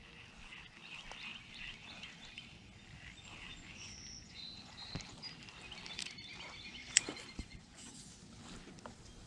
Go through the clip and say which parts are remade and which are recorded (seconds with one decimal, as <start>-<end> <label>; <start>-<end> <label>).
0.0-3.5 recorded; 3.5-4.7 remade; 4.7-6.7 recorded; 6.7-8.0 remade; 8.0-9.3 recorded